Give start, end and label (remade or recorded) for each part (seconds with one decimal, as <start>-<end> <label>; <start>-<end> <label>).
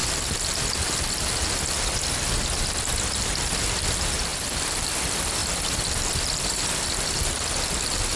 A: 0.0-8.2 recorded